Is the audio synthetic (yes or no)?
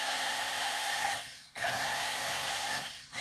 yes